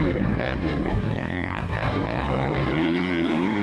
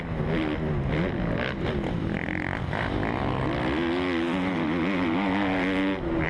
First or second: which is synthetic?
first